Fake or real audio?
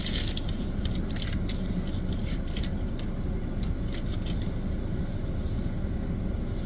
real